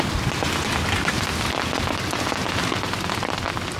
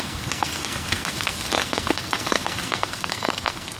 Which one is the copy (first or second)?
second